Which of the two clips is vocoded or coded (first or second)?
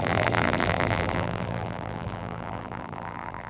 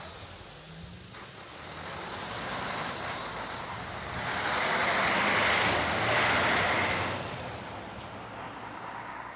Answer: first